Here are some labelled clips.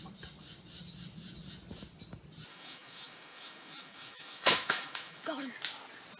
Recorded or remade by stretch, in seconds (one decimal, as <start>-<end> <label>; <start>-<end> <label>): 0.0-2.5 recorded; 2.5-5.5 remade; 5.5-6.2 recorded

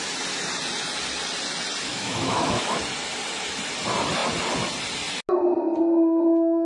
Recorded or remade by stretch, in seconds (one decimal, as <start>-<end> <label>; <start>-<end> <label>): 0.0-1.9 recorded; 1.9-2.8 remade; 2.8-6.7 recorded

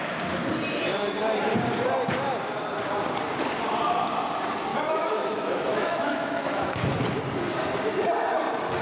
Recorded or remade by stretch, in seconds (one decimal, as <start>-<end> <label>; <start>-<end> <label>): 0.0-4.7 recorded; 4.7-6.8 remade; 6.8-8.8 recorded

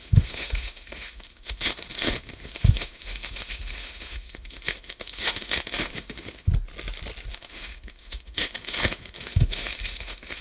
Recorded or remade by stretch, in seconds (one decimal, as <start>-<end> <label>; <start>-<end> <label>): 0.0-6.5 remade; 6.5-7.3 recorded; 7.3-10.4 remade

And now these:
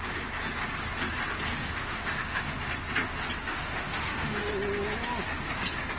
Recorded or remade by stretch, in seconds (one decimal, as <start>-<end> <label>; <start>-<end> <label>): 0.0-1.5 recorded; 1.5-2.6 remade; 2.6-3.5 recorded; 3.5-4.5 remade; 4.5-6.0 recorded

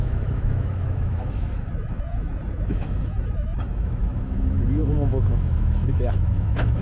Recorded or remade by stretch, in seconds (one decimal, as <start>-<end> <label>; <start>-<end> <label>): 0.0-6.8 remade